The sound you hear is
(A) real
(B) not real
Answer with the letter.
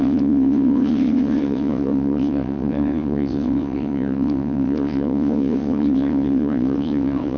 B